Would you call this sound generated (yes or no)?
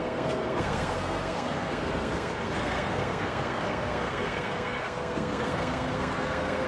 yes